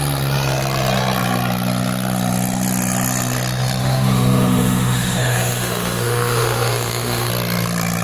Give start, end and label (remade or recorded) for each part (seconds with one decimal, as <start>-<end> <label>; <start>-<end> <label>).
0.0-3.8 recorded; 3.8-7.3 remade; 7.3-8.0 recorded